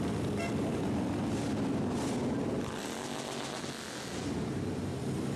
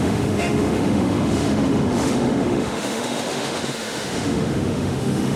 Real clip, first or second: first